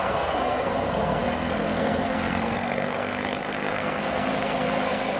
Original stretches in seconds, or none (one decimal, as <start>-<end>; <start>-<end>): none